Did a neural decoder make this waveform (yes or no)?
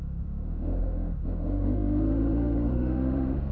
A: yes